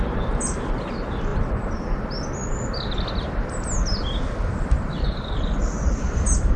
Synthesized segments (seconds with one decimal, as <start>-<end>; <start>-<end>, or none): none